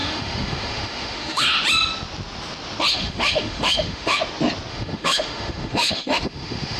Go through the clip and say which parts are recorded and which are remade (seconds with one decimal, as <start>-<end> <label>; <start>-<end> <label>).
0.0-1.4 remade; 1.4-2.9 recorded; 2.9-4.2 remade; 4.2-4.7 recorded; 4.7-6.8 remade